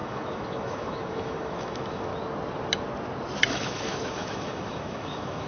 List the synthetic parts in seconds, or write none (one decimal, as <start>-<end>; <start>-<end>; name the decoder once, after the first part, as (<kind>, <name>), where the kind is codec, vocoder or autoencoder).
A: 0.0-2.1 (autoencoder, DAC-VAE); 3.5-5.5